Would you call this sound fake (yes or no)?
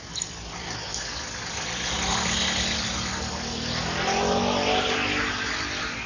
no